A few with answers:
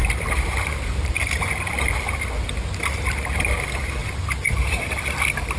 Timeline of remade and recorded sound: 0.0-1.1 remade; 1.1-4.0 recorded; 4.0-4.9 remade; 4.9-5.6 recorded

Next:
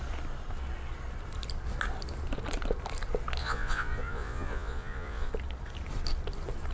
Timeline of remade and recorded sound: 0.0-3.4 recorded; 3.4-5.3 remade; 5.3-6.7 recorded

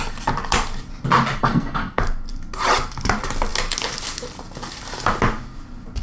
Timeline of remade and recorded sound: 0.0-1.4 recorded; 1.4-2.0 remade; 2.0-6.0 recorded